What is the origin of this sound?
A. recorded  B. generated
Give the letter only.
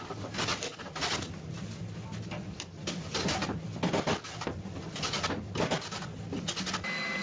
A